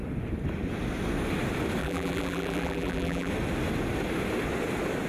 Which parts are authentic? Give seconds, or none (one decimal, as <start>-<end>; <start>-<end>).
0.0-1.8; 3.3-5.1